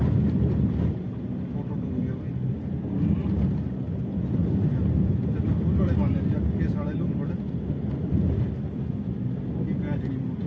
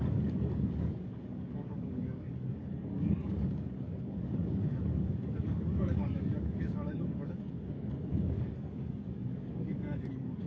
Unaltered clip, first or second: first